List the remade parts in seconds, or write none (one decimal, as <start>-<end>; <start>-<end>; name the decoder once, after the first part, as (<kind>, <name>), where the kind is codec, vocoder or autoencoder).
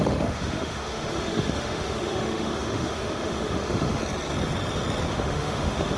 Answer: 0.0-4.0 (autoencoder, DAC-VAE); 5.1-6.0